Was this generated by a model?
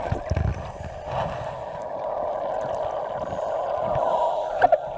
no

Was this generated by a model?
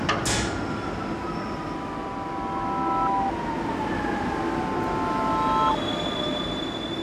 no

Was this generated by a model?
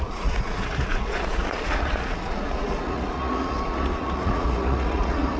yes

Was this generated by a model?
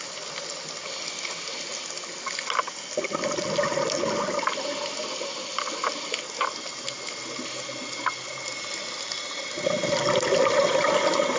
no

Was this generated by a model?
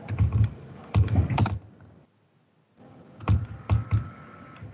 no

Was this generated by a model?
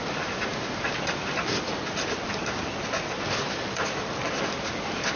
no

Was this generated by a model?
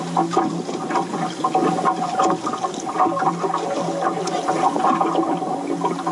no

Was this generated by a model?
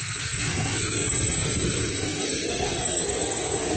yes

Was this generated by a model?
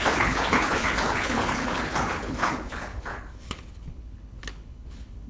yes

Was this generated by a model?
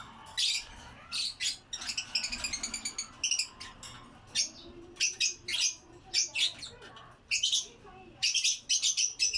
no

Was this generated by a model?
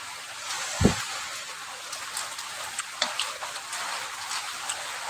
no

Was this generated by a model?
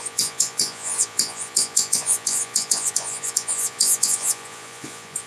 yes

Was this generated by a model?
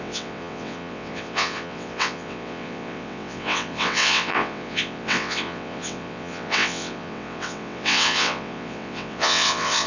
yes